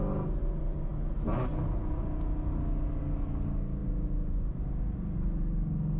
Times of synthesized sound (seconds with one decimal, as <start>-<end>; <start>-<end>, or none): none